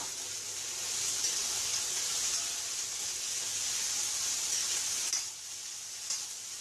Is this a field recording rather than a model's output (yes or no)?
yes